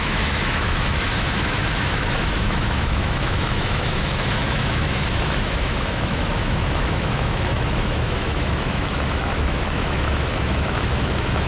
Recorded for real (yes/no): no